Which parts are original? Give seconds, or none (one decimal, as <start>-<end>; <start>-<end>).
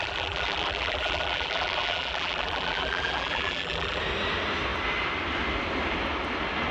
4.0-6.7